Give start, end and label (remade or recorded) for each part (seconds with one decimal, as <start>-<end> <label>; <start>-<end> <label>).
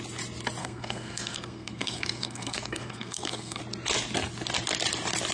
0.0-0.6 recorded; 0.6-3.6 remade; 3.6-5.3 recorded